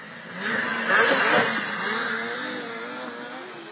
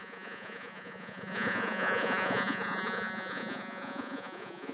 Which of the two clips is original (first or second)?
first